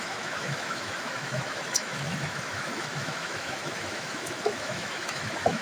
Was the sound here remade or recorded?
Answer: remade